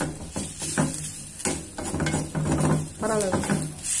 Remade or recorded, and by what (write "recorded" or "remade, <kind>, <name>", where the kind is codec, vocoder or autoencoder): recorded